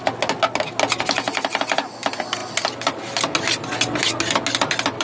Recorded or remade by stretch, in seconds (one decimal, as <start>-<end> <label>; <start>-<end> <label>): 0.0-5.0 recorded